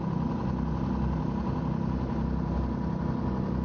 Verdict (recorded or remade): recorded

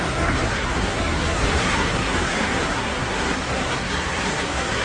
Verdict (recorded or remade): remade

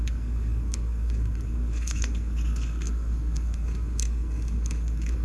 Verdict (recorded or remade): remade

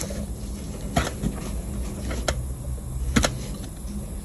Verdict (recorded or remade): recorded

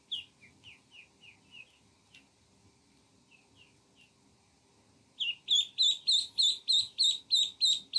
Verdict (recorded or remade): recorded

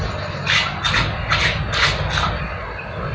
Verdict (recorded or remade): recorded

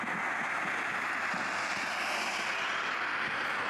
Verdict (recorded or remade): recorded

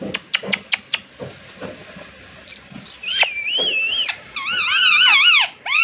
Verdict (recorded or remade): remade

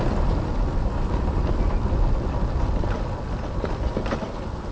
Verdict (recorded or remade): recorded